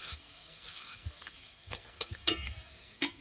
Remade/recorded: remade